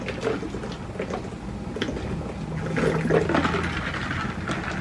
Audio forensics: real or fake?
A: real